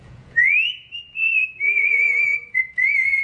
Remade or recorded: remade